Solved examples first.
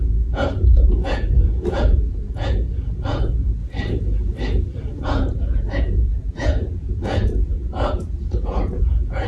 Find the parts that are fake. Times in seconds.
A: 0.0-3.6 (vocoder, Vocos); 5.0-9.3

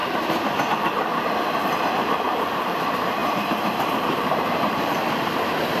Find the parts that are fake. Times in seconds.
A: 0.7-1.1 (vocoder, BigVGAN v2); 1.9-5.8

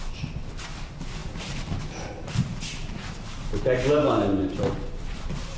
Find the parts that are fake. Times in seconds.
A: 4.4-5.6 (vocoder, BigVGAN v2)

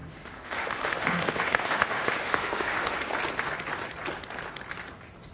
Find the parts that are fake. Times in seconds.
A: 0.0-3.2 (autoencoder, DAC-VAE)

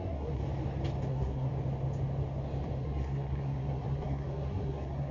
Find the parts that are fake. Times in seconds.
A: 0.0-0.4 (codec, SNAC); 1.1-1.5; 2.8-5.1

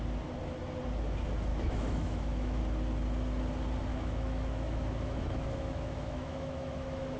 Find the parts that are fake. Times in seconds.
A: 1.5-2.6 (autoencoder, DAC-VAE); 3.9-7.2